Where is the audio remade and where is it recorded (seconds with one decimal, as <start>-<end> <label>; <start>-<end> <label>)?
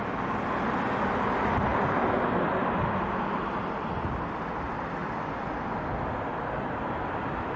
0.0-1.7 recorded; 1.7-4.4 remade; 4.4-7.6 recorded